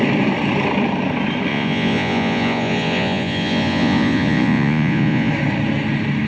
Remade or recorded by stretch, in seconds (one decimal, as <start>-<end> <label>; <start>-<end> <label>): 0.0-1.5 recorded; 1.5-5.3 remade; 5.3-6.3 recorded